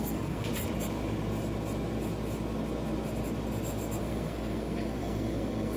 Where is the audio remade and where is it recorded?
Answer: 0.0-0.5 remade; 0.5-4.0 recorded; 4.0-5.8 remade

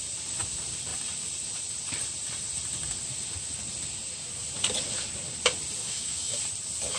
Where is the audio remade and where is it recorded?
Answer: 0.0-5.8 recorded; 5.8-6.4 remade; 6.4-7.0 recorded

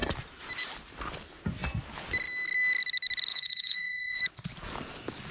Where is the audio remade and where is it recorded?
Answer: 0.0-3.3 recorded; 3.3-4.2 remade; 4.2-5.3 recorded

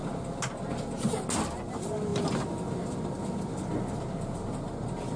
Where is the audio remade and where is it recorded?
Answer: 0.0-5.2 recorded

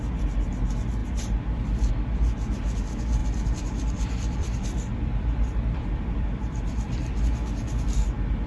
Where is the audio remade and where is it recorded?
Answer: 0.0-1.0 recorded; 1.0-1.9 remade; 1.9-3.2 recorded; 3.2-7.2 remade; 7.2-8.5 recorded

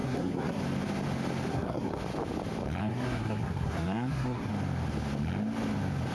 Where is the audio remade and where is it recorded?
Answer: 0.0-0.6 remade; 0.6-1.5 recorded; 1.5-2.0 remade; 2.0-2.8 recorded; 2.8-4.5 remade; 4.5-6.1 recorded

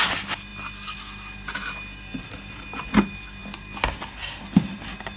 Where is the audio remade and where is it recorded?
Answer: 0.0-5.2 recorded